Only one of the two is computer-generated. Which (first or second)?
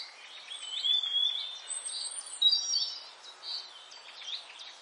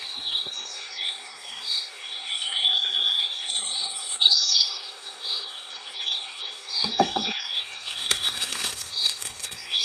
second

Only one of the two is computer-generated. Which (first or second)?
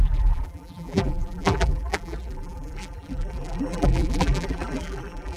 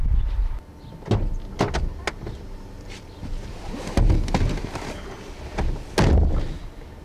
first